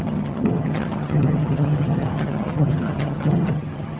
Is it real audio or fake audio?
fake